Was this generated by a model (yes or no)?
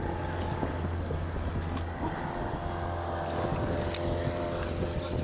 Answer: no